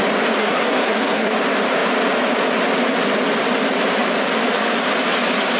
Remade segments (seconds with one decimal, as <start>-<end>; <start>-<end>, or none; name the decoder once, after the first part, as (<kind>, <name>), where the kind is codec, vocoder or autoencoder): 0.4-1.3 (codec, SNAC)